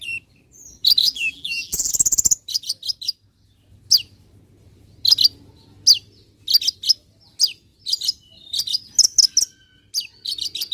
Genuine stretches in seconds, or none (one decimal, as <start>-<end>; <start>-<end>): 0.0-1.0; 1.9-10.7